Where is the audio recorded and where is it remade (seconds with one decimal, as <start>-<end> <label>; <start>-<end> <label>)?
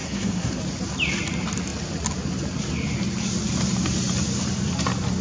0.0-0.6 remade; 0.6-5.2 recorded